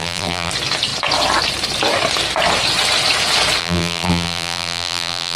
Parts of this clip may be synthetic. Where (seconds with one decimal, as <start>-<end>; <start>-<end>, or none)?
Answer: 0.0-0.5; 3.6-5.4